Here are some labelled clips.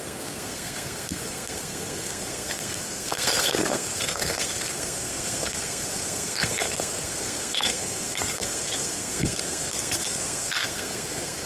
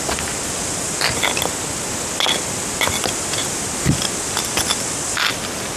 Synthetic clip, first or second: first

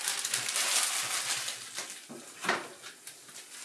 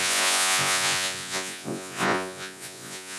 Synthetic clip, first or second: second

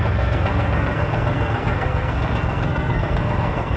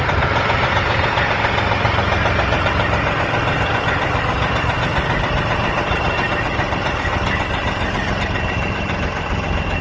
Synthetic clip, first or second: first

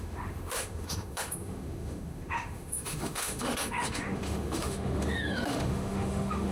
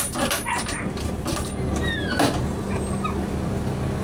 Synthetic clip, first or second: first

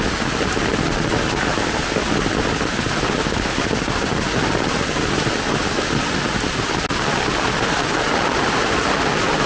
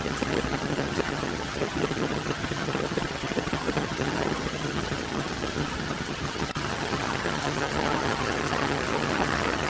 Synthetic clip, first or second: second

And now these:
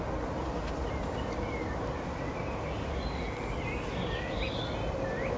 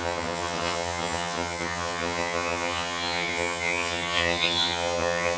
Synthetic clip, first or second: second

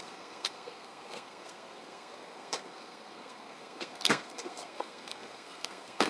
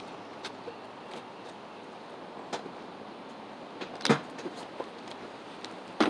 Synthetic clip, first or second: first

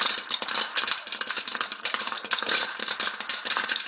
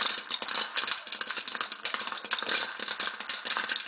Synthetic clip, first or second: first